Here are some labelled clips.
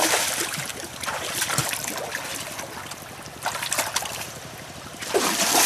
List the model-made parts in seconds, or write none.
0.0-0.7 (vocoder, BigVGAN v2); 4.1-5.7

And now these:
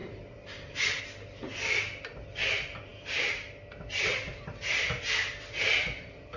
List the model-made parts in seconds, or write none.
none

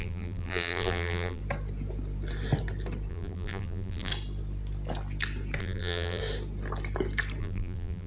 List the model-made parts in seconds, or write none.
0.0-1.4 (vocoder, BigVGAN v2); 3.1-4.1; 5.6-6.2; 7.4-8.1

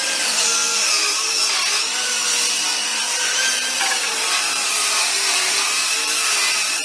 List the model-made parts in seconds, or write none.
0.0-6.8 (vocoder, BigVGAN v2)

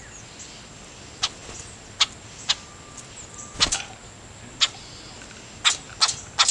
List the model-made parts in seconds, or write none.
none

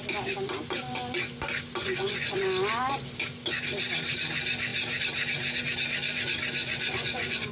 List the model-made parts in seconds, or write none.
1.8-2.4 (vocoder, Vocos); 6.6-7.5